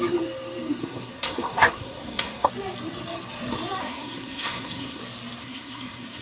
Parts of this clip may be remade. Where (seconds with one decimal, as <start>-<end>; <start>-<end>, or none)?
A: 0.8-2.5; 3.8-5.0; 5.4-6.2

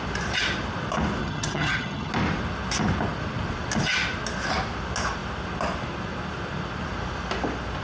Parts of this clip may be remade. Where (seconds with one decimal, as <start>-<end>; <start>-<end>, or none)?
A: 1.2-2.1

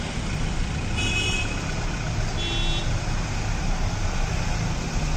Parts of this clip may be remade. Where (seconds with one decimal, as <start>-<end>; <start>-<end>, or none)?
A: none

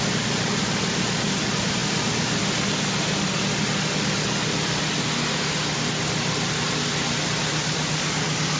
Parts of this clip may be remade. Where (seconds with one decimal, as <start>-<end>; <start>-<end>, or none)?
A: none

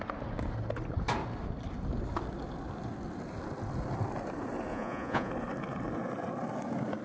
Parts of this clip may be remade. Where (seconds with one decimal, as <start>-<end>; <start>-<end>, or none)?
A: 4.7-5.3